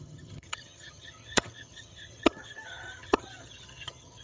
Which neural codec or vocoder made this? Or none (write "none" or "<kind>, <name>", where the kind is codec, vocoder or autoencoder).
vocoder, HiFi-GAN